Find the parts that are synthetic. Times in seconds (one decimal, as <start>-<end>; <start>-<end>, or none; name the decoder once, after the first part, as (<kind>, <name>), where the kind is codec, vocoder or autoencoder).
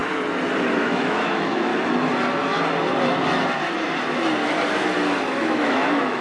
0.8-1.7 (autoencoder, DAC-VAE); 5.4-6.2